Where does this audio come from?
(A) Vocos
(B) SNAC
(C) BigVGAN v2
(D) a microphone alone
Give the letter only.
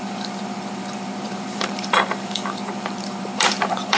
C